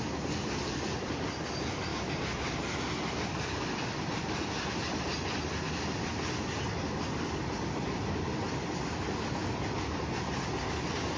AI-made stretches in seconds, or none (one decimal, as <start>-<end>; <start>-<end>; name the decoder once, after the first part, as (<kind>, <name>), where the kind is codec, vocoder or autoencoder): none